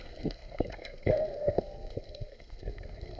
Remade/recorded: remade